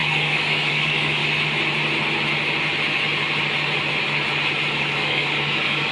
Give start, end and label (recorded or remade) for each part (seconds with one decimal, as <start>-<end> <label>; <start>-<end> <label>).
0.0-1.2 remade; 1.2-4.7 recorded; 4.7-5.9 remade